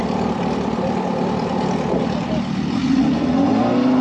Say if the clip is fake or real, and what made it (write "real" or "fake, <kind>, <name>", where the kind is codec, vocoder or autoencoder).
real